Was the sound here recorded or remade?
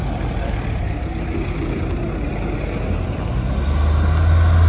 recorded